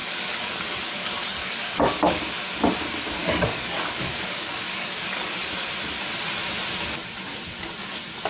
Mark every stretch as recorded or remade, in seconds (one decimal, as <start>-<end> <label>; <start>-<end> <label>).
0.0-2.2 remade; 2.2-3.2 recorded; 3.2-5.4 remade; 5.4-8.3 recorded